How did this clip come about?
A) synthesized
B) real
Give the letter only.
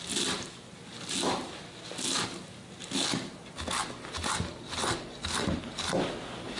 B